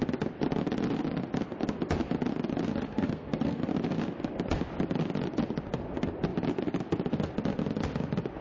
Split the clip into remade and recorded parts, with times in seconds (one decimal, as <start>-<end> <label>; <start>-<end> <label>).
0.0-2.8 recorded; 2.8-3.6 remade; 3.6-8.4 recorded